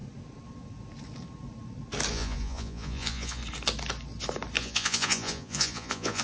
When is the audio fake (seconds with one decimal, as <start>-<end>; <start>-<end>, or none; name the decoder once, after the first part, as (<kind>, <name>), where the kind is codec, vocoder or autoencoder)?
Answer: 2.1-3.4 (vocoder, Vocos); 4.6-6.2